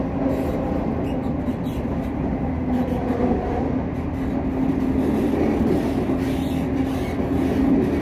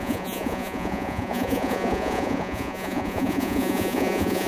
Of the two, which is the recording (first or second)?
first